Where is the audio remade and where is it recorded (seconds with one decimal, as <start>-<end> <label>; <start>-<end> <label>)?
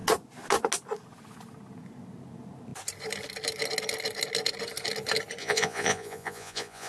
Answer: 0.0-5.4 recorded; 5.4-6.9 remade